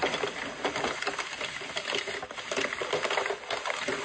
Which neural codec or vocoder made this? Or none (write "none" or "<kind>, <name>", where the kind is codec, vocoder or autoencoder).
none